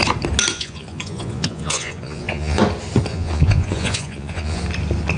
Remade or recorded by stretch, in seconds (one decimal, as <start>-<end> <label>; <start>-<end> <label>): 0.0-0.5 recorded; 0.5-2.6 remade; 2.6-3.1 recorded; 3.1-4.6 remade; 4.6-5.2 recorded